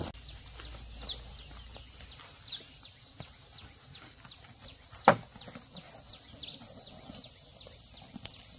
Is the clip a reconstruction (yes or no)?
no